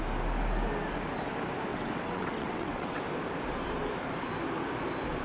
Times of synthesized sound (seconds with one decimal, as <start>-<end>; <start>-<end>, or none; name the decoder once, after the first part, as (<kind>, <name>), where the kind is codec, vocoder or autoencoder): 1.7-3.0 (vocoder, WaveNeXt)